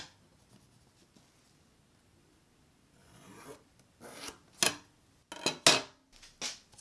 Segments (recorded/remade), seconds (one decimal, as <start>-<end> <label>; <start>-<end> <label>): 0.0-3.0 recorded; 3.0-3.6 remade; 3.6-6.8 recorded